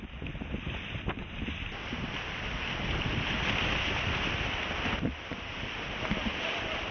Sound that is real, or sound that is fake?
real